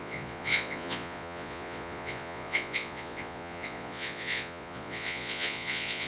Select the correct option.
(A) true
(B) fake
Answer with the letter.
B